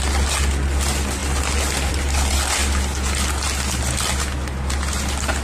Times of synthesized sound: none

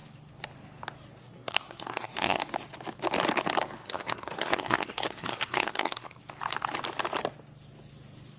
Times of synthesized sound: 1.2-2.4 (codec, SNAC); 3.8-6.2